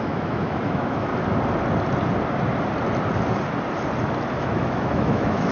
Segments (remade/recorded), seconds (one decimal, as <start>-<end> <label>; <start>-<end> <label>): 0.0-1.1 remade; 1.1-4.4 recorded; 4.4-5.5 remade

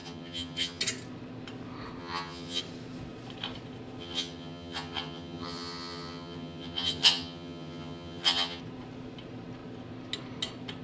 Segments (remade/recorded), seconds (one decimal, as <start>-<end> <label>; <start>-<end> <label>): 0.0-0.8 remade; 0.8-2.0 recorded; 2.0-2.6 remade; 2.6-4.0 recorded; 4.0-8.6 remade; 8.6-10.8 recorded

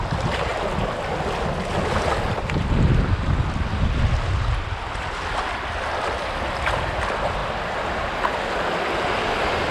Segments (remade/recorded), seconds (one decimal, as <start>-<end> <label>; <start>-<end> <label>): 0.0-9.7 recorded

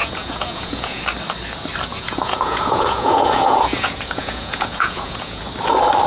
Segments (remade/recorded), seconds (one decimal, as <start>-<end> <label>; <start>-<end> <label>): 0.0-1.0 remade; 1.0-1.9 recorded; 1.9-5.4 remade; 5.4-6.1 recorded

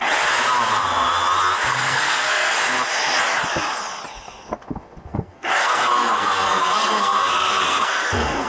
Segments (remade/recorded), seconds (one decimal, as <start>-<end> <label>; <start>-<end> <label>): 0.0-1.7 recorded; 1.7-2.6 remade; 2.6-5.1 recorded; 5.1-8.5 remade

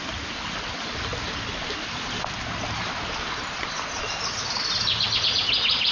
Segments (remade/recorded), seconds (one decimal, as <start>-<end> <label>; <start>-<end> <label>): 0.0-5.9 recorded